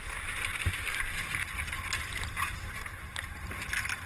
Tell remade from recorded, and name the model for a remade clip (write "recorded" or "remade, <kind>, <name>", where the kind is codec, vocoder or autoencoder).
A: recorded